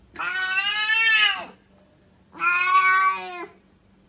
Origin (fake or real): real